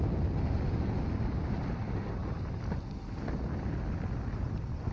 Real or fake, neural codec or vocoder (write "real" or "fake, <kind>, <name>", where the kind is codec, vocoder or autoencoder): real